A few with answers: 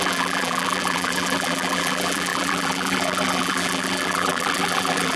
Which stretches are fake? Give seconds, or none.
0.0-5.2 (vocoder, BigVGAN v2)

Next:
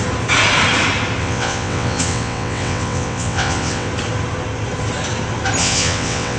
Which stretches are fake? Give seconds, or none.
1.2-3.9 (vocoder, WaveNeXt); 5.6-6.4

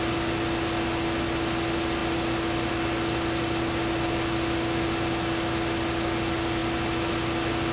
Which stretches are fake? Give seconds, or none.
none